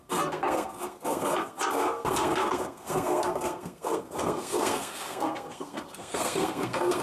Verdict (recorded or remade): remade